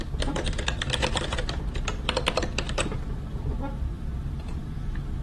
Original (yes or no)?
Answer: yes